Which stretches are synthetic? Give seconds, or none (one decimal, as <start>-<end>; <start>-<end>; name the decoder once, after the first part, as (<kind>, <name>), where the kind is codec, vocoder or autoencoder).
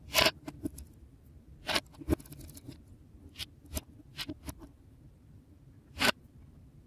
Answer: none